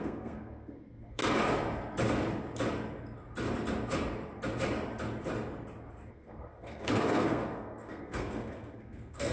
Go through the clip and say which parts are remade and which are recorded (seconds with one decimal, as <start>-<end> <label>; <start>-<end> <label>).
0.0-1.2 remade; 1.2-6.1 recorded; 6.1-9.3 remade